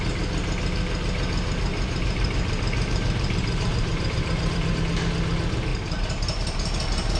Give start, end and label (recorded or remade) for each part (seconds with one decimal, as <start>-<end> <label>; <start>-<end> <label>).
0.0-1.7 recorded; 1.7-4.8 remade; 4.8-5.7 recorded; 5.7-6.7 remade; 6.7-7.2 recorded